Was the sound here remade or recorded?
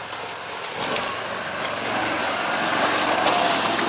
recorded